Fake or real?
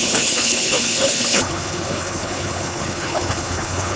fake